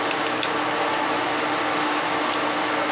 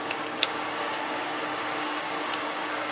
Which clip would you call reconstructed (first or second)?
second